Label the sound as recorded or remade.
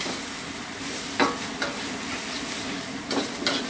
recorded